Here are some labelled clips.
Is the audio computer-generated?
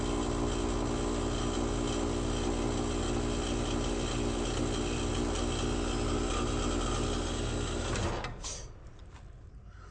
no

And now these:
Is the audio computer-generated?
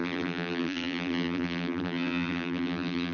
yes